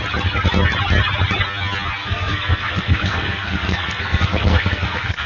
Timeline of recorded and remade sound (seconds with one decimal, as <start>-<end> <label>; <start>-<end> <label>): 0.0-2.0 recorded; 2.0-5.3 remade